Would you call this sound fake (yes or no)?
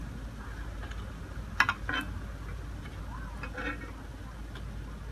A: no